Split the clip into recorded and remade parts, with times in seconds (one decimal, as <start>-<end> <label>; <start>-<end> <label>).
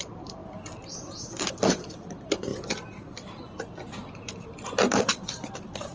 0.0-0.4 remade; 0.4-1.5 recorded; 1.5-2.5 remade; 2.5-3.6 recorded; 3.6-4.0 remade; 4.0-4.9 recorded; 4.9-5.9 remade